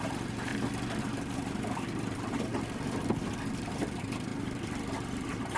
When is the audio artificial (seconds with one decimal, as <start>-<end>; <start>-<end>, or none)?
0.0-0.5; 1.0-2.5; 3.5-4.3; 4.9-5.6